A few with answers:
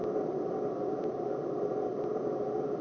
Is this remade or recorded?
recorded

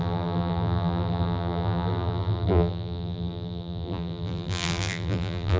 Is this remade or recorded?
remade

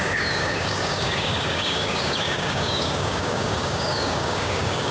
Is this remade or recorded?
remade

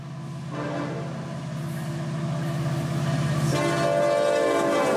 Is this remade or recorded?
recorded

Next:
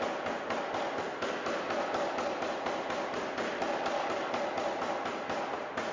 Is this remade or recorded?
recorded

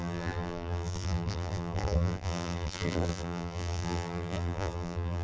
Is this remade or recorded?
remade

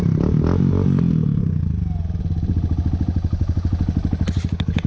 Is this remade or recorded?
recorded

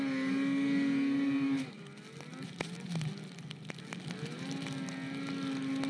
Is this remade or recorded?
recorded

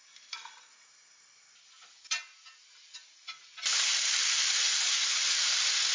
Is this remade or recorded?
recorded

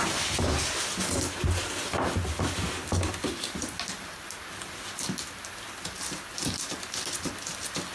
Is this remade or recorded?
recorded